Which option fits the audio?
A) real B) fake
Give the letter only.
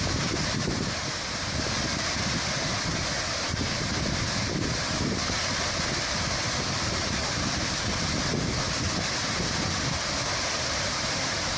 B